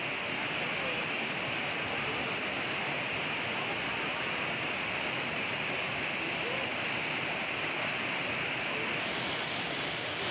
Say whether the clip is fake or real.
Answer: real